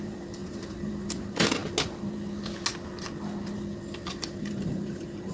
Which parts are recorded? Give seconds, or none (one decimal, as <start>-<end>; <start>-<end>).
1.6-4.1